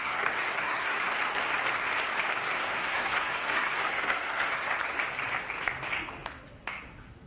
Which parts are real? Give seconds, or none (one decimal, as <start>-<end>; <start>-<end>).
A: 1.1-2.6; 4.7-7.3